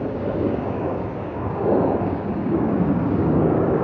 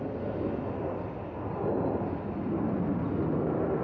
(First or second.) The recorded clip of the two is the second